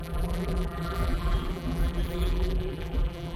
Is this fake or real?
fake